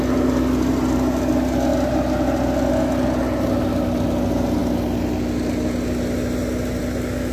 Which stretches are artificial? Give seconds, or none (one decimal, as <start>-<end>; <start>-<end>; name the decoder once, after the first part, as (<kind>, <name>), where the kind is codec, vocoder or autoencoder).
none